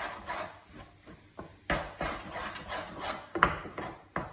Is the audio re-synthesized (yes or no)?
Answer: no